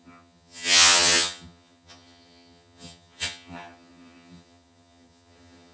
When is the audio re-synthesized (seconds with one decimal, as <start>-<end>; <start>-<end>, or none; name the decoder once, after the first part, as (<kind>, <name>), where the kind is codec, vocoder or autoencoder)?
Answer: 0.0-5.7 (vocoder, HiFi-GAN)